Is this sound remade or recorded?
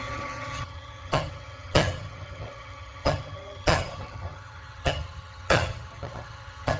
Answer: remade